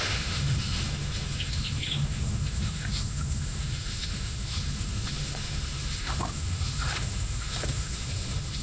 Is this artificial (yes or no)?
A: yes